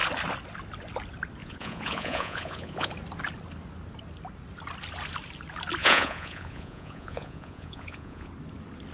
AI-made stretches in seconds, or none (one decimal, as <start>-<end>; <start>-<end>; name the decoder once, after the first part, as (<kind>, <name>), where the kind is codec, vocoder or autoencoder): 1.4-2.9 (vocoder, Vocos); 5.8-8.3